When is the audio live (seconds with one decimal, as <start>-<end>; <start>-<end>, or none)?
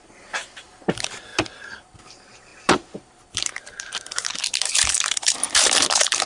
none